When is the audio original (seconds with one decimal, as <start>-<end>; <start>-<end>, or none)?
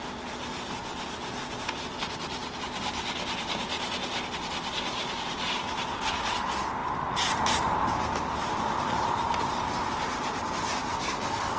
0.0-10.9